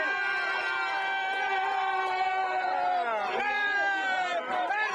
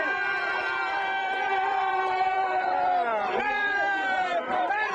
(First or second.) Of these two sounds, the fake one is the second